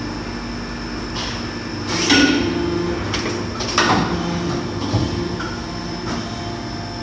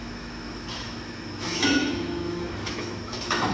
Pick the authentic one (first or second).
first